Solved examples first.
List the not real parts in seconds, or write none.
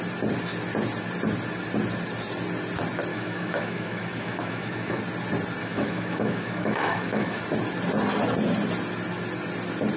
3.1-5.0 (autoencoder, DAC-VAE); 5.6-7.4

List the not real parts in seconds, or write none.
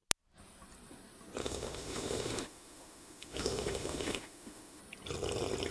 1.4-4.8 (autoencoder, DAC-VAE)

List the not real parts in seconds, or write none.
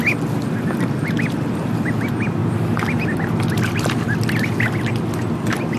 none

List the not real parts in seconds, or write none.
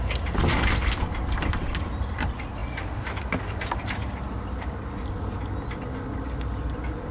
none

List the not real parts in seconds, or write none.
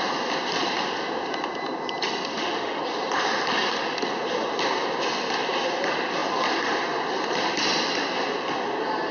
2.3-2.8 (autoencoder, DAC-VAE)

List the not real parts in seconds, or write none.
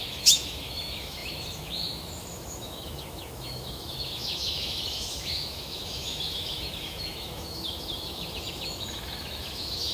0.0-9.9 (autoencoder, DAC-VAE)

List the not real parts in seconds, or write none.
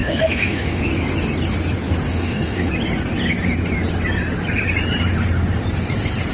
0.0-0.8 (autoencoder, DAC-VAE); 2.1-2.7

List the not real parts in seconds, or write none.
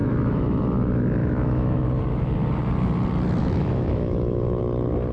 0.0-0.6 (autoencoder, DAC-VAE); 1.2-1.8; 3.4-4.6